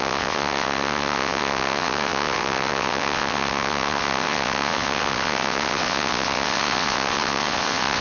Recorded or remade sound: remade